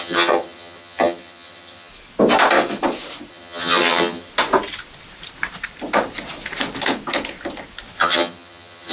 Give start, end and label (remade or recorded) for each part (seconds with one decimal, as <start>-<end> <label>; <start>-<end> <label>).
0.0-1.9 remade; 1.9-3.3 recorded; 3.3-4.3 remade; 4.3-8.0 recorded; 8.0-8.9 remade